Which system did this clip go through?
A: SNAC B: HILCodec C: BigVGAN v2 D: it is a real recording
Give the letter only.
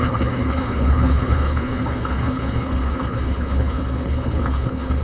B